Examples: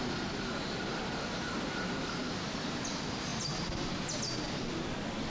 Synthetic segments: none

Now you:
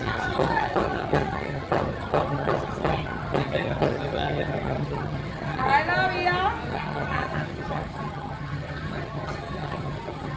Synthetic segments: 0.0-5.7 (vocoder, HiFi-GAN); 6.7-10.4

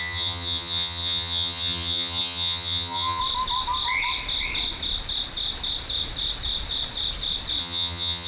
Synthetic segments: 0.0-3.2 (vocoder, HiFi-GAN); 7.6-8.3

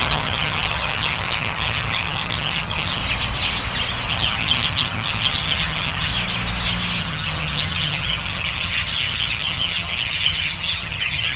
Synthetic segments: 0.0-3.0 (vocoder, HiFi-GAN); 4.1-6.1; 7.0-11.4